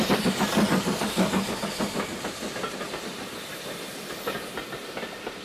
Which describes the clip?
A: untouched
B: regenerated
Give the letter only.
A